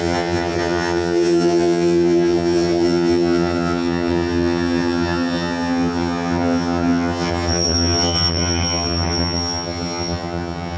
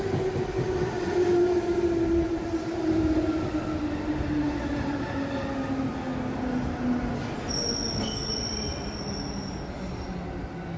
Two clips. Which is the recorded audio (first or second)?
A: second